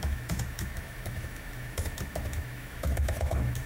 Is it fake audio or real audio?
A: fake